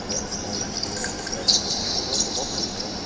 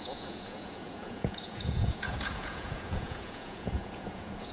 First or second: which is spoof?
second